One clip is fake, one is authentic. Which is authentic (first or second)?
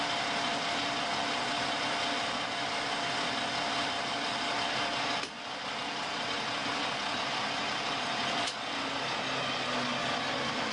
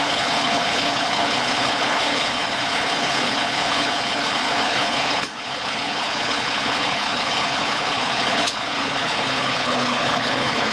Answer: first